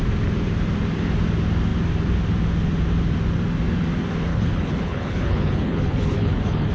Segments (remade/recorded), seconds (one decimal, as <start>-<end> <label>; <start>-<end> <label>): 0.0-4.3 recorded; 4.3-6.7 remade